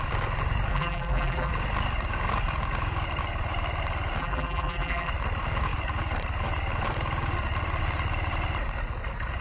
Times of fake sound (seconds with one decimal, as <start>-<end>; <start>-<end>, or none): 0.7-1.5; 4.2-5.1